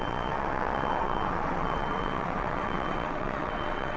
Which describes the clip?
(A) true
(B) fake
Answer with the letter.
B